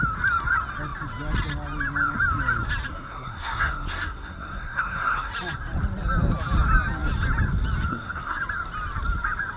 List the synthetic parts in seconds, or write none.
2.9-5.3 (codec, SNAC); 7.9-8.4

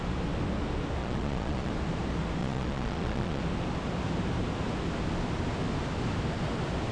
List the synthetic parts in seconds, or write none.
1.0-1.7 (vocoder, Vocos); 2.4-3.4

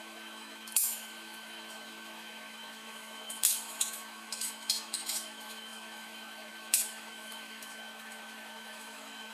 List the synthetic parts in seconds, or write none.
0.0-9.3 (autoencoder, DAC-VAE)

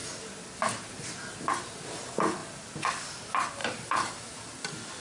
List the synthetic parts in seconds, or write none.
3.6-4.3 (vocoder, BigVGAN v2)

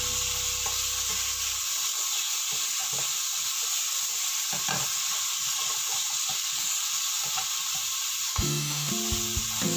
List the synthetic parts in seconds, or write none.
8.3-8.9 (autoencoder, DAC-VAE)

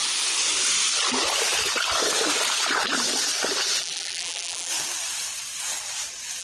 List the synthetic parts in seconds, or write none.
3.8-4.7 (vocoder, BigVGAN v2)